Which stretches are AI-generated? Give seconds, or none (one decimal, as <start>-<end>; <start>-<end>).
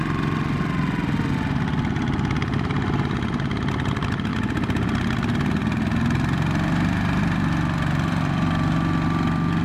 none